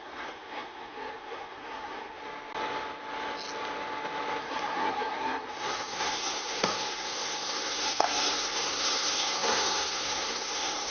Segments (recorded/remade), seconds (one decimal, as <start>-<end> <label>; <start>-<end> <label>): 0.0-2.2 remade; 2.2-4.4 recorded; 4.4-10.9 remade